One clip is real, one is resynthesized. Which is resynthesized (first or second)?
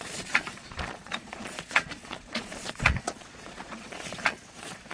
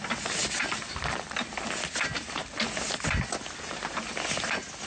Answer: first